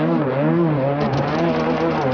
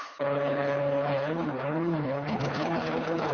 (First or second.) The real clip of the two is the first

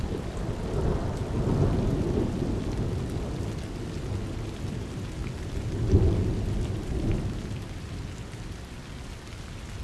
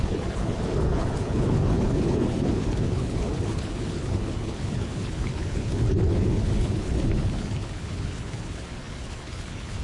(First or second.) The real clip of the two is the first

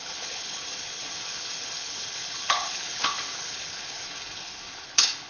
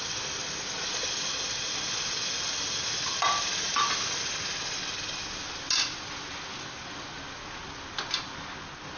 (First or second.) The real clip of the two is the second